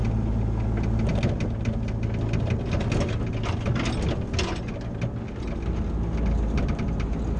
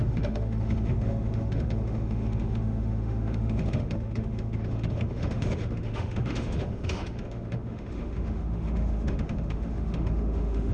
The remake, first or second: second